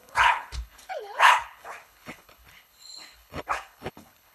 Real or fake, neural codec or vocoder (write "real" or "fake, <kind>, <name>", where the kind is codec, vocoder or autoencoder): fake, codec, HILCodec